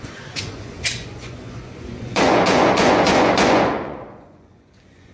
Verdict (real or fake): fake